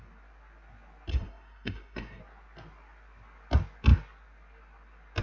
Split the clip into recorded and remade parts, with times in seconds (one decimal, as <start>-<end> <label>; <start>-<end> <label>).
0.0-1.1 recorded; 1.1-2.2 remade; 2.2-5.2 recorded